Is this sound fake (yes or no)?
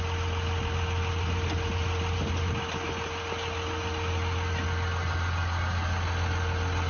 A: no